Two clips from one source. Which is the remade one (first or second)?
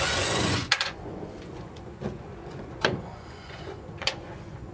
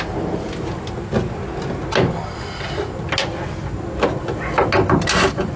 first